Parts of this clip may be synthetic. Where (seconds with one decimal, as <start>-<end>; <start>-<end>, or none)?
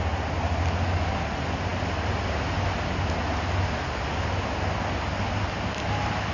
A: none